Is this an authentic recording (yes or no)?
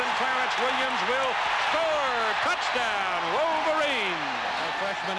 yes